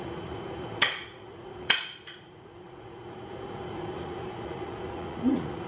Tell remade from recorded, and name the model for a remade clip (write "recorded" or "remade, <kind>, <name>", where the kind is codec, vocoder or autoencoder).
remade, vocoder, Vocos